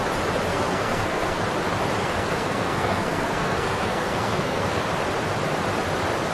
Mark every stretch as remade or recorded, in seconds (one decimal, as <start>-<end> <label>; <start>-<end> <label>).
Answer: 0.0-0.5 recorded; 0.5-1.4 remade; 1.4-2.0 recorded; 2.0-4.8 remade; 4.8-6.3 recorded